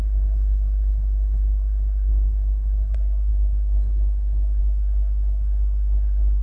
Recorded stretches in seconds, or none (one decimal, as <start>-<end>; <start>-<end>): none